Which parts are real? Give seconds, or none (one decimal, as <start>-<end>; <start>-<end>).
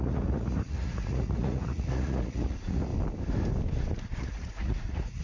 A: 2.9-4.2